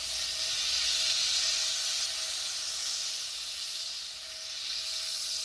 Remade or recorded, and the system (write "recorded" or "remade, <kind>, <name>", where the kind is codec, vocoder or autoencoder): recorded